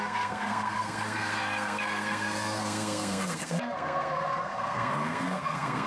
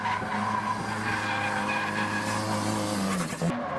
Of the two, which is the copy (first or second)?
first